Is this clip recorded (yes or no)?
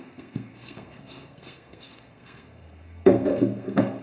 no